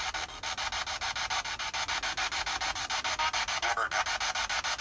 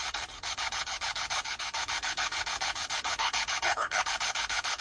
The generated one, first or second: second